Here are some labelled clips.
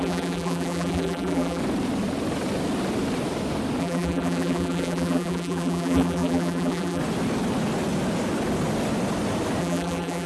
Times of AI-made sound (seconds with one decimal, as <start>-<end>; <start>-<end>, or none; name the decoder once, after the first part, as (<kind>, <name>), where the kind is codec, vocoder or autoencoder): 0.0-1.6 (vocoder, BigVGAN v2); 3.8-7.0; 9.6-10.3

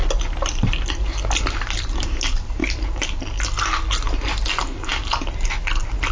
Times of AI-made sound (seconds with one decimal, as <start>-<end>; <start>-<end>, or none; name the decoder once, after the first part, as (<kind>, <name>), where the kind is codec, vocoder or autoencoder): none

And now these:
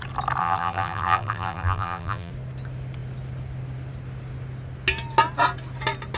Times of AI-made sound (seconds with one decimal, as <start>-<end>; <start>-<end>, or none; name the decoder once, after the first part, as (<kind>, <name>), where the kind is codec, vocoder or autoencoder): 0.4-2.3 (vocoder, BigVGAN v2)

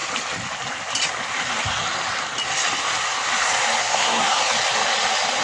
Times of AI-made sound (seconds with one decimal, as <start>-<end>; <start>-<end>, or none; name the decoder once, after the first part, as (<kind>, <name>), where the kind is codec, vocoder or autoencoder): 3.8-4.4 (codec, SNAC)